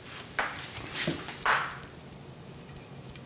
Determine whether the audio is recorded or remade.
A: recorded